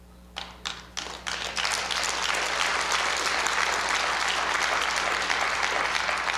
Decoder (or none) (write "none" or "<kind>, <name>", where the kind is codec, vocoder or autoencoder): none